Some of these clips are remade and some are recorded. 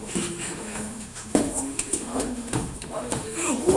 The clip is remade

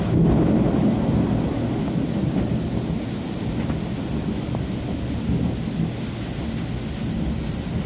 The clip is recorded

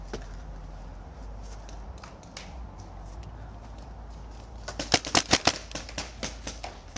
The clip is recorded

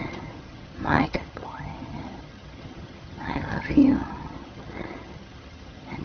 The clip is remade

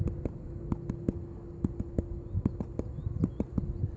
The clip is recorded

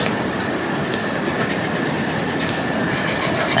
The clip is recorded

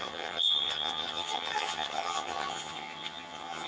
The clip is remade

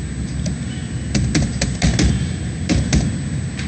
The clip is recorded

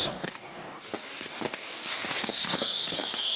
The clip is remade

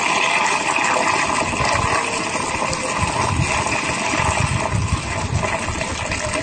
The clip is recorded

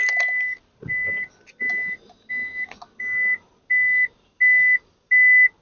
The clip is recorded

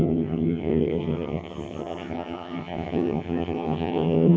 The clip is remade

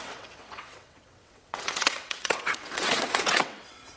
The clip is remade